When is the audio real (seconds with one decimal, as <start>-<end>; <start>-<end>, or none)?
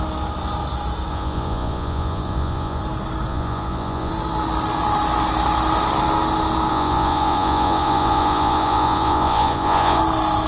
0.0-1.1; 2.8-3.3; 4.1-6.7; 10.0-10.5